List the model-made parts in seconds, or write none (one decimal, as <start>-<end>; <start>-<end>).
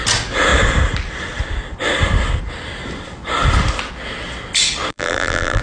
4.9-5.6